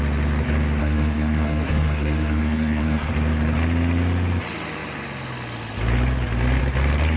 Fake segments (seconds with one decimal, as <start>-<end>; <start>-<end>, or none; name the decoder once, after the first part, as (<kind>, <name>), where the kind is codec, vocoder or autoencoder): 0.8-3.1 (codec, SNAC)